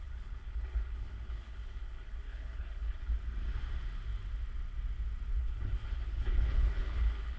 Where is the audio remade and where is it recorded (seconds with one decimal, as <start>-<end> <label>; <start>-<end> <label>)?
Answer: 0.0-3.1 remade; 3.1-5.4 recorded; 5.4-7.4 remade